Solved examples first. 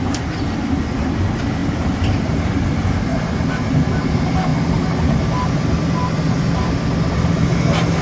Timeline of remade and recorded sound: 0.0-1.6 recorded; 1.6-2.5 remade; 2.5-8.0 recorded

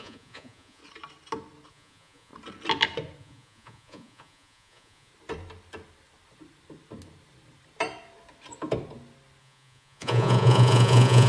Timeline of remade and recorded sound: 0.0-0.8 remade; 0.8-1.7 recorded; 1.7-2.3 remade; 2.3-3.2 recorded; 3.2-5.1 remade; 5.1-9.4 recorded; 9.4-11.3 remade

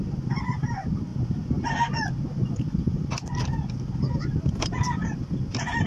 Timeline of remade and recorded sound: 0.0-5.9 recorded

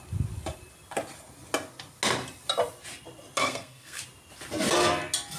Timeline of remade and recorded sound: 0.0-3.4 recorded; 3.4-4.0 remade; 4.0-5.4 recorded